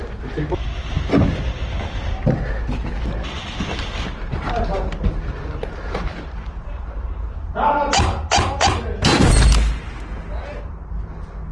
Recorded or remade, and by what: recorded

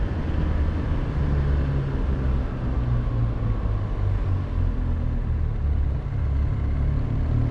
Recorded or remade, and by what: recorded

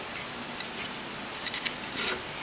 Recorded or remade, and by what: recorded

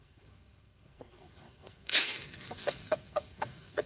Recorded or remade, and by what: remade, codec, SNAC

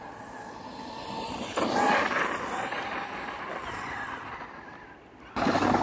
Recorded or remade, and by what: recorded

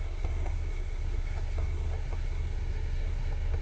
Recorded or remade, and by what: remade, codec, SNAC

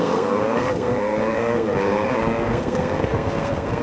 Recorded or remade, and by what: remade, codec, SNAC